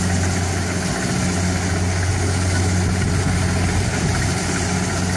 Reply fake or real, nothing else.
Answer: real